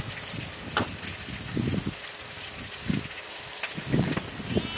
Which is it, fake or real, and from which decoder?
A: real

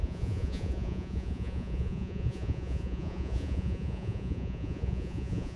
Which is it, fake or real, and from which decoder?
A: fake, vocoder, Vocos